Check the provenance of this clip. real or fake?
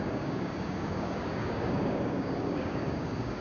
fake